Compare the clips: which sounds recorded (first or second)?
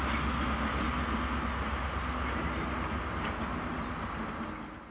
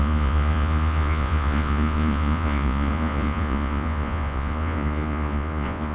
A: first